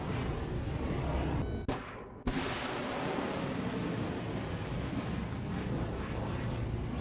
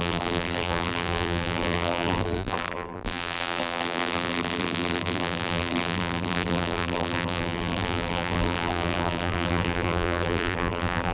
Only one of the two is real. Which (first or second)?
first